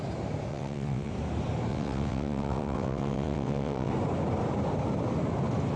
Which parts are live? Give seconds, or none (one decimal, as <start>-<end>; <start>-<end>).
0.0-0.5; 1.1-1.7; 3.9-5.8